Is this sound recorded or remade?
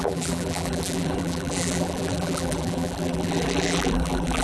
remade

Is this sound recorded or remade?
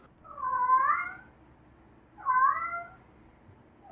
recorded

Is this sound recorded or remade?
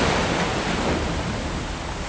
recorded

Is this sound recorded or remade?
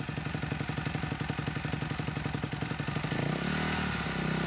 recorded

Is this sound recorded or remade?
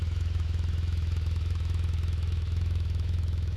remade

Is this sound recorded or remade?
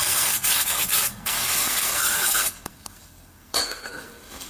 remade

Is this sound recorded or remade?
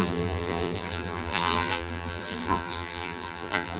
remade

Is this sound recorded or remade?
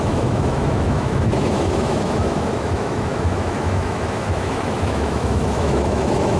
remade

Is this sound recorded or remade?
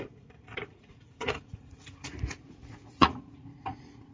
remade